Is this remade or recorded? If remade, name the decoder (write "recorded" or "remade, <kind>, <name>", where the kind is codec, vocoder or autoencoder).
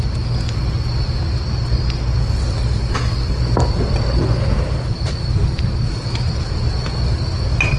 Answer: recorded